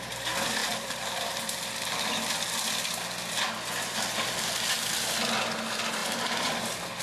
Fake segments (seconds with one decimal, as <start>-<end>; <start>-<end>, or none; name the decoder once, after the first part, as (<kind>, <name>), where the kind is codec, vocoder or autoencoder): 0.6-1.4 (vocoder, BigVGAN v2); 6.0-7.0